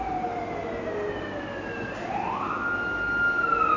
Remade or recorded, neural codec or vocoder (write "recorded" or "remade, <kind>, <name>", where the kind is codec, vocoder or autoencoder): recorded